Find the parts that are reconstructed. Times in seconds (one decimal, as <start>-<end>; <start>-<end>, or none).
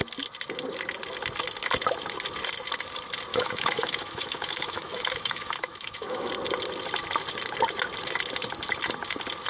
3.3-6.3